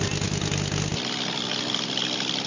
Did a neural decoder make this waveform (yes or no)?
no